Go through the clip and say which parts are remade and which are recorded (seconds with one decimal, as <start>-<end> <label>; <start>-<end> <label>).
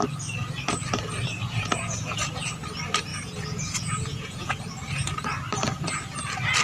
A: 0.0-1.4 recorded; 1.4-2.4 remade; 2.4-3.1 recorded; 3.1-4.6 remade; 4.6-6.6 recorded